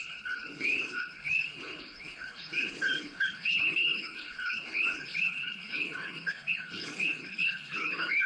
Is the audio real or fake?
fake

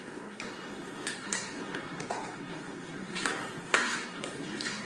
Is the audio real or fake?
fake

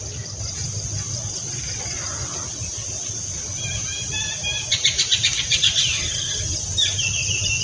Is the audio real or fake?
real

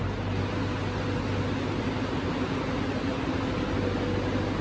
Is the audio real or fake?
real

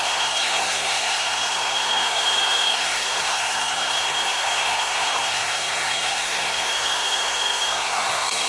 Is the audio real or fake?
fake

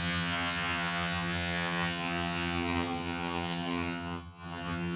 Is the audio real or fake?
fake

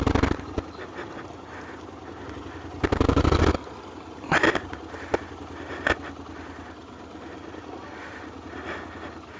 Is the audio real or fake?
real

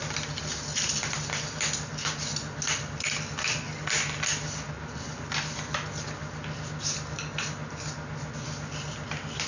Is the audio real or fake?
real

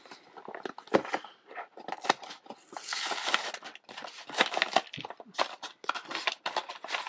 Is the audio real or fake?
real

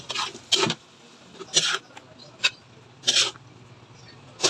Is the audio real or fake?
real